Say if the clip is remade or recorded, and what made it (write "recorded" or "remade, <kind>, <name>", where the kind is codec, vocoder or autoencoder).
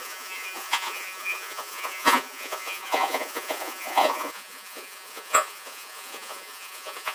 remade, vocoder, Vocos